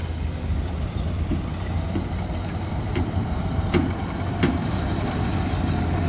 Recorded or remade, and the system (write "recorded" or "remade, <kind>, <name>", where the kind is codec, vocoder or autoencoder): remade, vocoder, BigVGAN v2